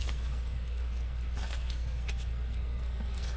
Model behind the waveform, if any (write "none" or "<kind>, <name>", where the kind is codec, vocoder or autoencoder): codec, SNAC